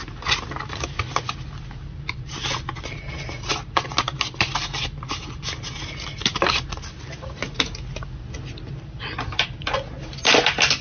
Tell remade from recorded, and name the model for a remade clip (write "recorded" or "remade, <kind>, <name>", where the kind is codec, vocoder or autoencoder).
recorded